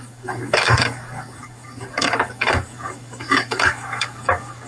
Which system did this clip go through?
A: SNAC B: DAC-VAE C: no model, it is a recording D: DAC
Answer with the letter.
D